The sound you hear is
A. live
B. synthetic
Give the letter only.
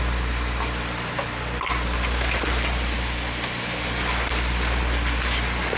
A